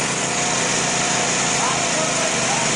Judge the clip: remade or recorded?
recorded